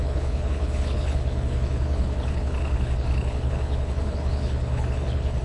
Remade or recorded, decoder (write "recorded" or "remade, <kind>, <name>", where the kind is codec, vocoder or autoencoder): remade, codec, HILCodec